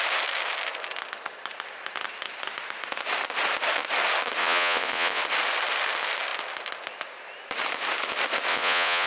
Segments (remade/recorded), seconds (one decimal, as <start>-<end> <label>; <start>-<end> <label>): 0.0-4.4 recorded; 4.4-5.2 remade; 5.2-8.5 recorded; 8.5-9.1 remade

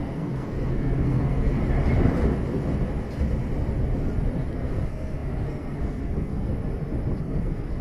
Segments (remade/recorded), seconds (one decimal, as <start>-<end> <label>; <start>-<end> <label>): 0.0-1.6 remade; 1.6-4.5 recorded; 4.5-6.5 remade; 6.5-7.2 recorded; 7.2-7.8 remade

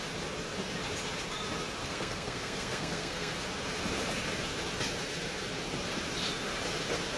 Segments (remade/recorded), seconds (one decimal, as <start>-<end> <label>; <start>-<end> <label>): 0.0-1.8 recorded; 1.8-3.4 remade; 3.4-7.2 recorded

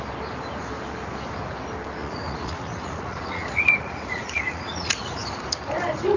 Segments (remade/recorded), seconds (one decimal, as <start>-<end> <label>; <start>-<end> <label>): 0.0-2.0 recorded; 2.0-5.2 remade; 5.2-6.2 recorded

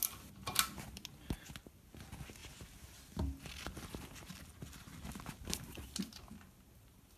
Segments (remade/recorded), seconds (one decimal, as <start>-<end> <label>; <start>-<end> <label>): 0.0-7.2 recorded

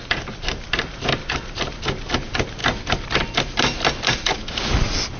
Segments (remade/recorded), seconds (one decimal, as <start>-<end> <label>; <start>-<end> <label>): 0.0-5.2 recorded